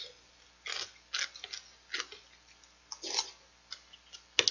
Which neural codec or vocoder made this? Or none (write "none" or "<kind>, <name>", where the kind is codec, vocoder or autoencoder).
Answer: none